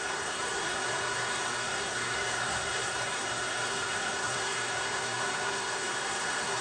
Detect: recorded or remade remade